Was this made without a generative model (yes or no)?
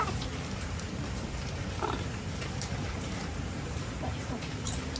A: no